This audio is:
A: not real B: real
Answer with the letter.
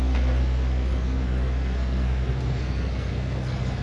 A